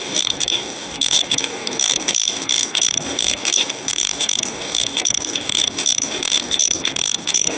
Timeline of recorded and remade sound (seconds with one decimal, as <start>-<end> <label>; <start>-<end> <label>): 0.0-7.6 remade